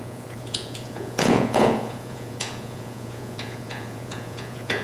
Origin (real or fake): fake